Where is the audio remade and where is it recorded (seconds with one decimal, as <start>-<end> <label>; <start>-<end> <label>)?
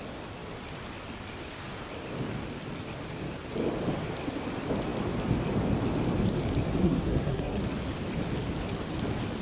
0.0-6.8 recorded; 6.8-7.6 remade; 7.6-9.4 recorded